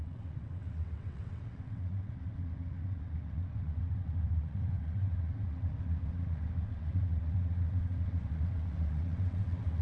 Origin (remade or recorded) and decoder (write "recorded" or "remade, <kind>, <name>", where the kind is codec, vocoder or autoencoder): remade, vocoder, WaveNeXt